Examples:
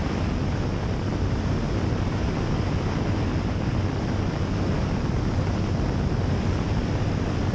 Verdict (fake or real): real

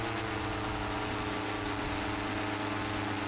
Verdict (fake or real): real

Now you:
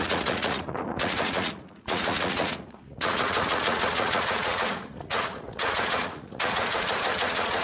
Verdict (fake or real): fake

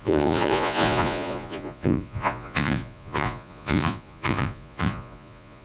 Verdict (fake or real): fake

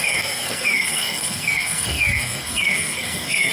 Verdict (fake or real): fake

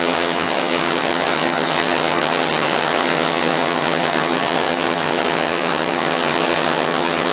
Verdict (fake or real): fake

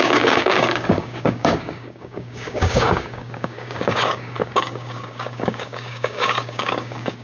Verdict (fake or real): fake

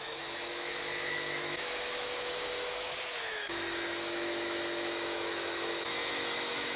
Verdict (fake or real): fake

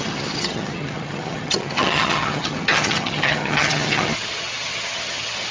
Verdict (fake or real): fake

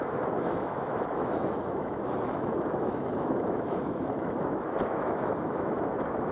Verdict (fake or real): fake